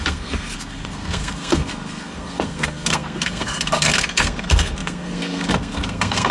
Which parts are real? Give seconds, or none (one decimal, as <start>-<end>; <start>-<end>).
none